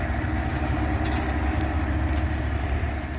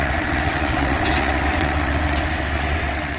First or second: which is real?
first